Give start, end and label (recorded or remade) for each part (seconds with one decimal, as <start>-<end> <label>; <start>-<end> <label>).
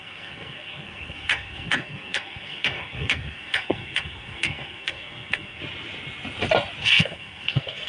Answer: 0.0-5.6 remade; 5.6-6.8 recorded; 6.8-7.9 remade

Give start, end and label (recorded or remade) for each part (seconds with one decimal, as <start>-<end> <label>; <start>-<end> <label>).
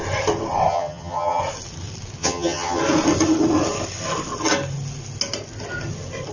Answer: 0.0-0.7 recorded; 0.7-1.4 remade; 1.4-2.2 recorded; 2.2-2.8 remade; 2.8-6.3 recorded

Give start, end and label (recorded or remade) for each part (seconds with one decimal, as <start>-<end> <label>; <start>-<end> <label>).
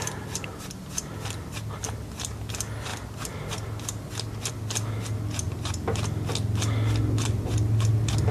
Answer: 0.0-8.3 recorded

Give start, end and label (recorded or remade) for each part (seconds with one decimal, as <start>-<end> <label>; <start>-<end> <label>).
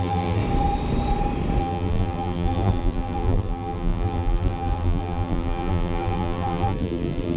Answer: 0.0-0.4 remade; 0.4-1.6 recorded; 1.6-7.4 remade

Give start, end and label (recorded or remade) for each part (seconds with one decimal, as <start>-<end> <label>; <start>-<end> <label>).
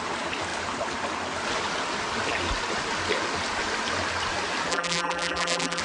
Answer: 0.0-4.7 recorded; 4.7-5.8 remade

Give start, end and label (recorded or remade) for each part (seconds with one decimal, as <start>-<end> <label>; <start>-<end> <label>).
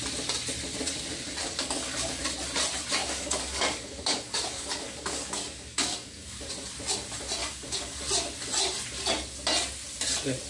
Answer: 0.0-1.4 recorded; 1.4-2.2 remade; 2.2-3.0 recorded; 3.0-6.5 remade; 6.5-7.4 recorded; 7.4-8.0 remade; 8.0-10.5 recorded